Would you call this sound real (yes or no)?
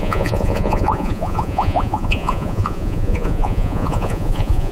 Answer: no